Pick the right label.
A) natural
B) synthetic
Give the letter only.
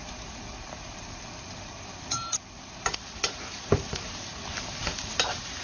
A